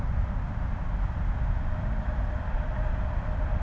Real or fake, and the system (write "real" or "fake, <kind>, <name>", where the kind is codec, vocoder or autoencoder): real